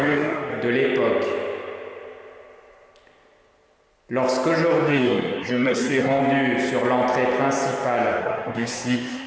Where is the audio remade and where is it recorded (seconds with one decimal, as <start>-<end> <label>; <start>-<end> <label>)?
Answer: 0.0-0.5 remade; 0.5-4.9 recorded; 4.9-6.2 remade; 6.2-8.2 recorded; 8.2-9.3 remade